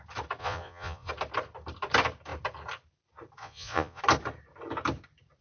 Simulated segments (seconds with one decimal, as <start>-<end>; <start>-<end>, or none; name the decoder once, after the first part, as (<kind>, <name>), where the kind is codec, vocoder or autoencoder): 0.4-1.1 (vocoder, Vocos); 3.4-4.0